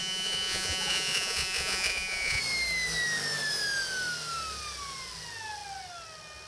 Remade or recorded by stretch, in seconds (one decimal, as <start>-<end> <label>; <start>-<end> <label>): 0.0-2.4 remade; 2.4-6.5 recorded